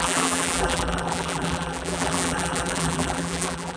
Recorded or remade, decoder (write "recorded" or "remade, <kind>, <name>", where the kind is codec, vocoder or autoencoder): remade, vocoder, BigVGAN v2